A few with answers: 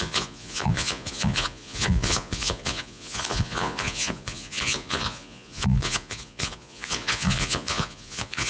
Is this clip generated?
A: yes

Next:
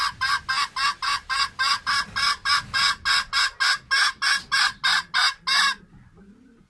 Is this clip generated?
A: no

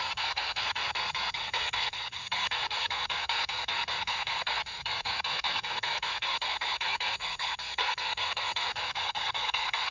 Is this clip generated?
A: yes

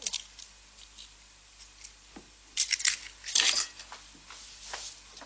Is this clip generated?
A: no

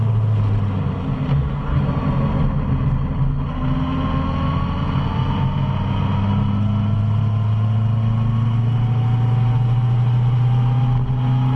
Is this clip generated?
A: no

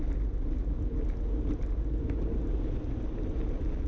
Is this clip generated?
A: no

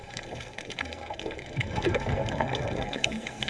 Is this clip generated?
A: yes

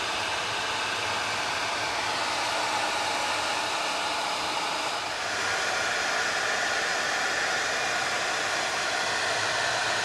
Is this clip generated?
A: no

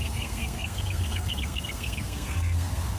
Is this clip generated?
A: yes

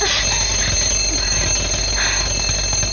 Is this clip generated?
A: no